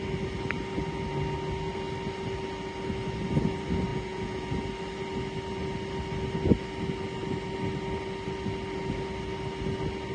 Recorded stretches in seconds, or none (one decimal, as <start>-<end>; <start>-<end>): 0.0-3.9; 4.6-10.1